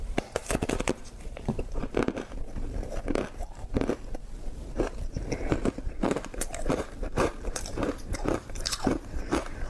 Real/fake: fake